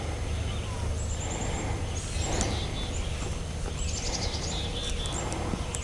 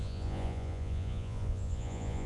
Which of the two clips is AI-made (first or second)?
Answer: second